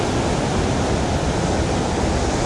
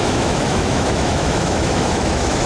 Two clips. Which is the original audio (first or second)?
first